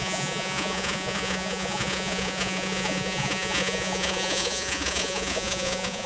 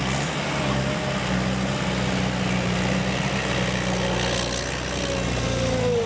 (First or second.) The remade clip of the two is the first